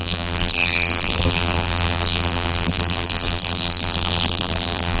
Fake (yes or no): yes